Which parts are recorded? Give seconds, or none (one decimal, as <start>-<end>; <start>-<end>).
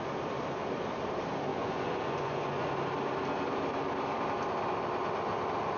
0.0-1.5; 2.7-5.8